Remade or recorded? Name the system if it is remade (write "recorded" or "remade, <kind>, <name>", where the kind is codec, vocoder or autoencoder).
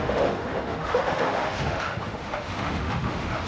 remade, autoencoder, DAC-VAE